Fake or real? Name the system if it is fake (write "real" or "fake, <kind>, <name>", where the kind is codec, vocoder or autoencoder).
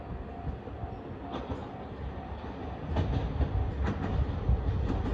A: real